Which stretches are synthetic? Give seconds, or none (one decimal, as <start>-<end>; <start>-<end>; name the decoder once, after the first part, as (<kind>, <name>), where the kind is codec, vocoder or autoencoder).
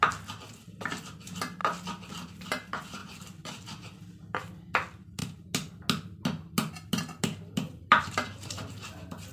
none